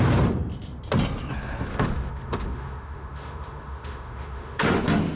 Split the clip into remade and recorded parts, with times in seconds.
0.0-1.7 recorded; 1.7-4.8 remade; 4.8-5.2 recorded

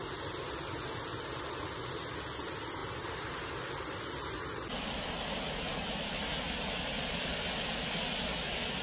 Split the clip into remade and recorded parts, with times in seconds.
0.0-8.8 recorded

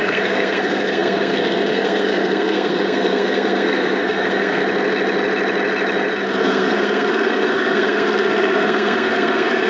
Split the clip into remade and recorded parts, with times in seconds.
0.0-4.6 remade; 4.6-6.4 recorded; 6.4-9.7 remade

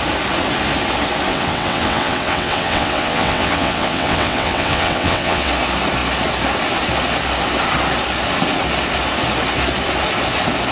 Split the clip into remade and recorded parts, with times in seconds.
0.0-1.3 recorded; 1.3-5.5 remade; 5.5-10.7 recorded

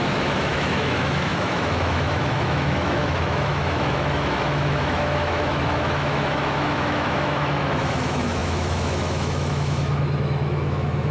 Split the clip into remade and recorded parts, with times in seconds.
0.0-11.1 remade